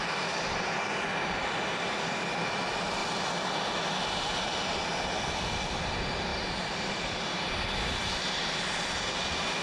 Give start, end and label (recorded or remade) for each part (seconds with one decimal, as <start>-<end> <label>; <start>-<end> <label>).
0.0-9.6 recorded